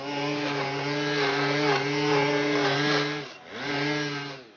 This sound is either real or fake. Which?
real